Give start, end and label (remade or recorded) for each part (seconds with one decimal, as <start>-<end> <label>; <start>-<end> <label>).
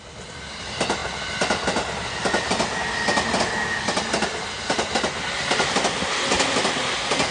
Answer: 0.0-7.3 recorded